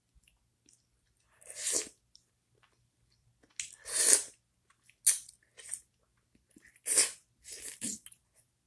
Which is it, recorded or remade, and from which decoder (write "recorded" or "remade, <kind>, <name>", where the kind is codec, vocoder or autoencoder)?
recorded